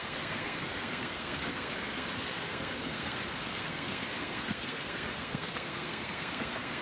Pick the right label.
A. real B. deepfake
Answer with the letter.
B